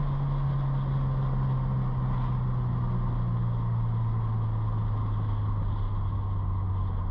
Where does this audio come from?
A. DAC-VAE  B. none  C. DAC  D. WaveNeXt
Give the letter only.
B